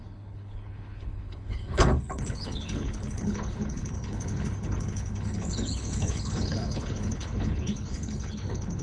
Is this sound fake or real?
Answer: fake